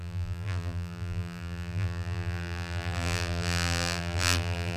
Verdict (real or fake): fake